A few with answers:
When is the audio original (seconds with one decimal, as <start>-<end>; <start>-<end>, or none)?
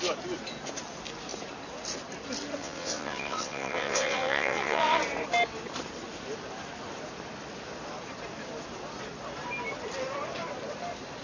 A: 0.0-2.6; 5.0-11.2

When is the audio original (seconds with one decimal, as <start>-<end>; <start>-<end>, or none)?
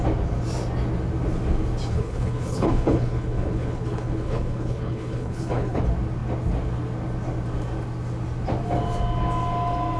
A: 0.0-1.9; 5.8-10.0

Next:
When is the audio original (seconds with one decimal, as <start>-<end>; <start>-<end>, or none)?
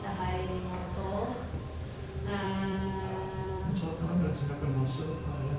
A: 0.0-0.8; 3.0-3.4; 4.5-5.6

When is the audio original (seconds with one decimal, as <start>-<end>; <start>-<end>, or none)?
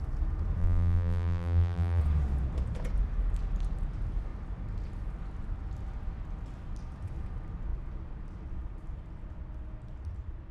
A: 0.0-0.6; 2.0-10.5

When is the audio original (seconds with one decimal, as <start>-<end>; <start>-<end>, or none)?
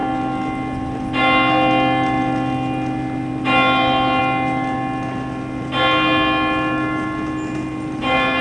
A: 0.0-8.4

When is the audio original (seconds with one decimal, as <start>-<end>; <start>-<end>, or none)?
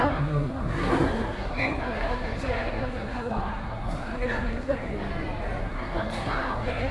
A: 4.9-5.6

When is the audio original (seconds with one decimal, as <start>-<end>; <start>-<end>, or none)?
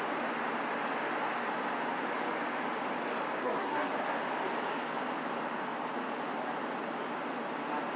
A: 0.0-3.4; 3.9-8.0